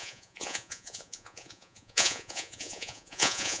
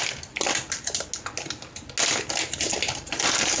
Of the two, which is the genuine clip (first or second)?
second